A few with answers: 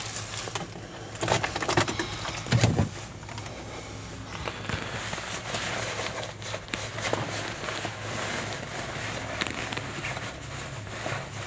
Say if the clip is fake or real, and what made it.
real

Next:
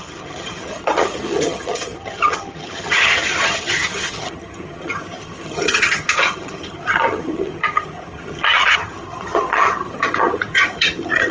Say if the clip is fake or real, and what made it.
fake, vocoder, HiFi-GAN